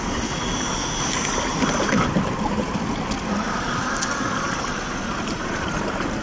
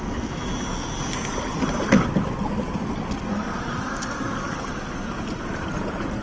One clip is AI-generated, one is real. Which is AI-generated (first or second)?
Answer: first